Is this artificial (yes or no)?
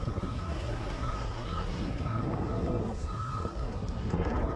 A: yes